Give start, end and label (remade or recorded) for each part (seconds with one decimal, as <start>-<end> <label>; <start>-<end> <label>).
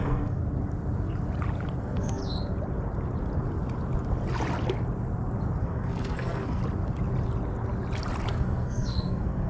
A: 0.0-0.4 remade; 0.4-1.8 recorded; 1.8-2.2 remade; 2.2-5.6 recorded; 5.6-6.6 remade; 6.6-8.3 recorded; 8.3-9.5 remade